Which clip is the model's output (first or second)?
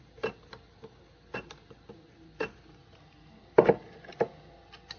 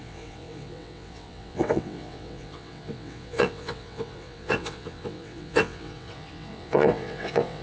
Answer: second